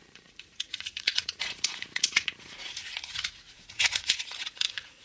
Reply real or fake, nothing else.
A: fake